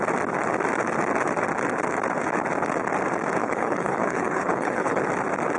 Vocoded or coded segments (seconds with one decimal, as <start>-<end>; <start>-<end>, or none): 3.4-5.0